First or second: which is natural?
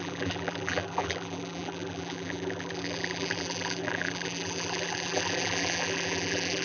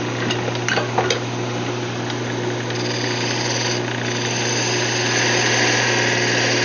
second